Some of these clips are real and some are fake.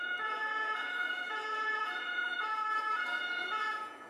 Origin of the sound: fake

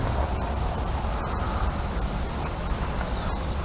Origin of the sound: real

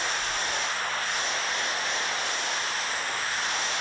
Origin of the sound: real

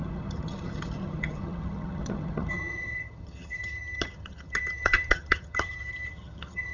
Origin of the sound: fake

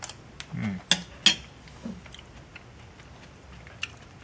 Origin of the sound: real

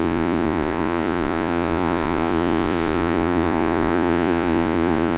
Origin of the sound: fake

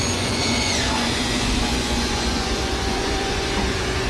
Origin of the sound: fake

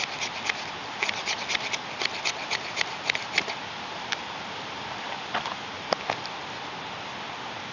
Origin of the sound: real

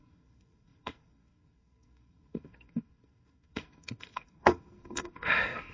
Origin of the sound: fake